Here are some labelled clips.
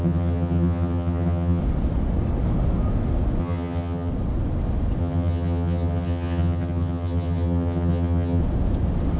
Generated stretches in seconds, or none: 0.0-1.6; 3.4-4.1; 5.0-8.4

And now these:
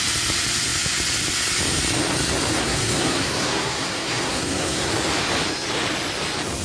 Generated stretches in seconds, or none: 2.6-4.9